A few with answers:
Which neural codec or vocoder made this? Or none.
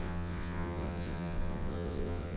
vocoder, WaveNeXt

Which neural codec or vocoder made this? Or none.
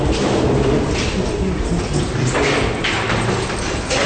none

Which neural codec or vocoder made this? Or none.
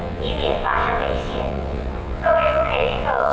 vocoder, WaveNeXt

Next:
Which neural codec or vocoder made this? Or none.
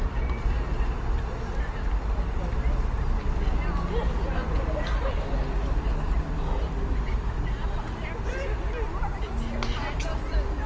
none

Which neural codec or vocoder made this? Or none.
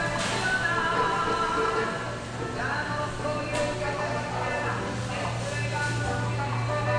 none